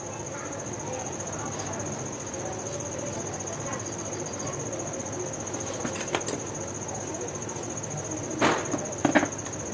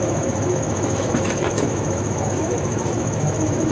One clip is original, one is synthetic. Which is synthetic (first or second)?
second